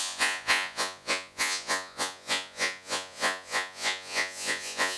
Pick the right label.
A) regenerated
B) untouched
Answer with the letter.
A